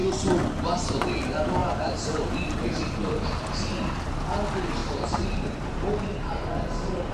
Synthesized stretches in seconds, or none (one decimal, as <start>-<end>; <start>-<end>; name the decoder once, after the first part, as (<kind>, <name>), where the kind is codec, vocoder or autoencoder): 1.6-2.3 (vocoder, BigVGAN v2); 4.8-6.3